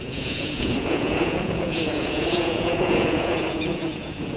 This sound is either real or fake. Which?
fake